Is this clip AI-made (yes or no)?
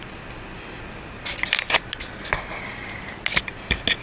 no